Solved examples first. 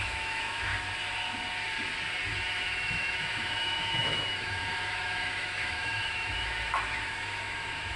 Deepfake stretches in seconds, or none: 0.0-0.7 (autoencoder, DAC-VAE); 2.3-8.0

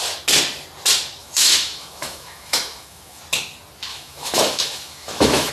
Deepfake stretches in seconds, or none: 1.2-3.2 (autoencoder, DAC-VAE); 3.9-5.5

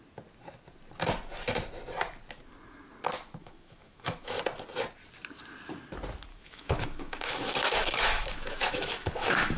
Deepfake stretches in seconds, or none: 3.4-4.4 (autoencoder, DAC-VAE); 6.3-9.6